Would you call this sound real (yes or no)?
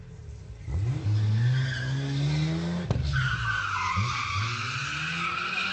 yes